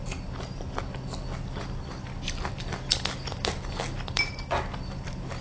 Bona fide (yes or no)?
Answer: yes